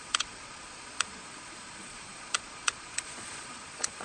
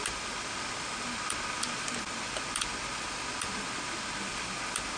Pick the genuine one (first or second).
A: second